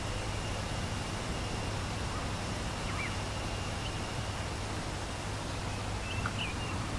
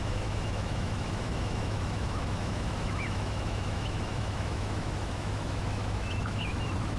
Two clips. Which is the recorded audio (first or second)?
first